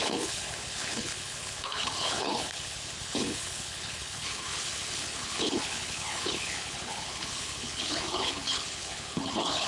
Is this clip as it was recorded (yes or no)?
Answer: no